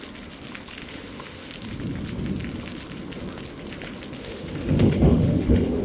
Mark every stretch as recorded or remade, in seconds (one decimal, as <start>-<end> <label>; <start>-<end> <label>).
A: 0.0-0.9 recorded; 0.9-1.5 remade; 1.5-4.2 recorded; 4.2-5.8 remade